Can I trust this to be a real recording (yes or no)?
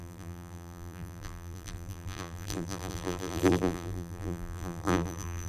no